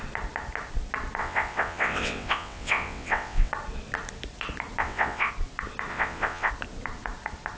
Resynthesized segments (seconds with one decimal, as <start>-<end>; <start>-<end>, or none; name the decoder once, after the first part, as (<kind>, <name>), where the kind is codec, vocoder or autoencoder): 1.2-3.5 (vocoder, WaveNeXt); 4.8-5.3; 5.9-6.5

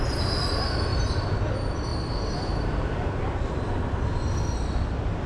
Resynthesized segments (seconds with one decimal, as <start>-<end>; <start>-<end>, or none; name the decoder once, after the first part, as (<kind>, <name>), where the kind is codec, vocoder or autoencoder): none